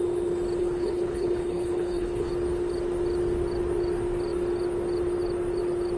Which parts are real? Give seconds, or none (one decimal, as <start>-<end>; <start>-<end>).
0.0-0.6; 2.3-6.0